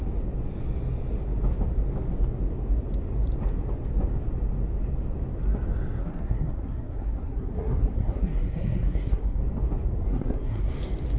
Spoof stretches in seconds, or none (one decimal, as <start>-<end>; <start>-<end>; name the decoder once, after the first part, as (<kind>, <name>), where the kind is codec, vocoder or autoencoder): 6.0-9.4 (codec, SNAC); 10.0-10.7